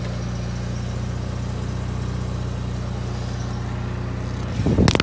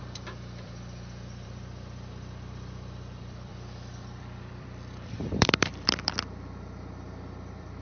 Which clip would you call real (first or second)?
first